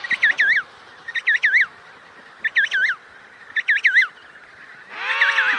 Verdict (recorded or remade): recorded